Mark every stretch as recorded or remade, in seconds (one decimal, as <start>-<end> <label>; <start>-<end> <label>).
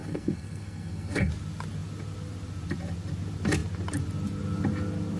0.0-1.3 remade; 1.3-5.2 recorded